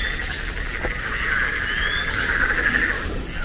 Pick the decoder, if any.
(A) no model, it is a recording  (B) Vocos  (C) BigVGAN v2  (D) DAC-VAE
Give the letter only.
A